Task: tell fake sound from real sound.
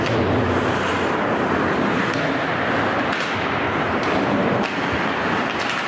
real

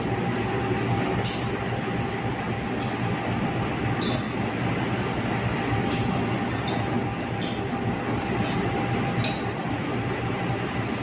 real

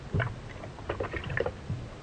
real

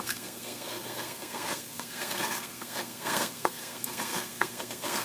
fake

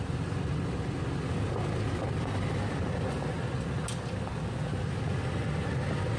real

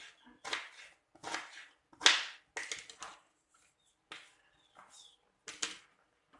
real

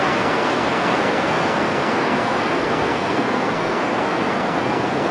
fake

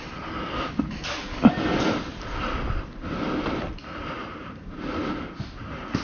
real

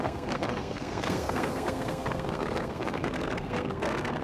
fake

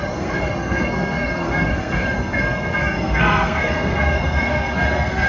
fake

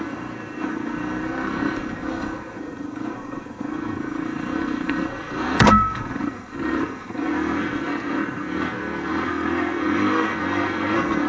fake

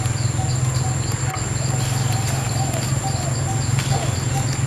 real